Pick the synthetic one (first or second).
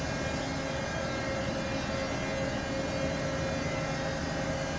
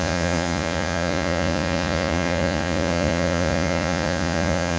second